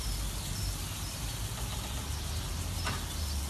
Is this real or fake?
real